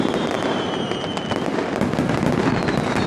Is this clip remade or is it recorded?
recorded